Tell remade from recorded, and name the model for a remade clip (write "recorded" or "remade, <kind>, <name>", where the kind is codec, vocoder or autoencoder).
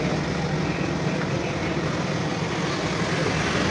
recorded